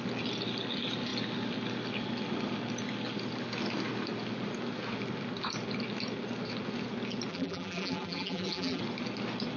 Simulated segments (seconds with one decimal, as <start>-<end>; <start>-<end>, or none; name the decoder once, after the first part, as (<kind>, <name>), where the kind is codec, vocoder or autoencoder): 7.3-8.8 (vocoder, BigVGAN v2)